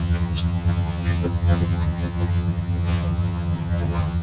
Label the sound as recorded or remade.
remade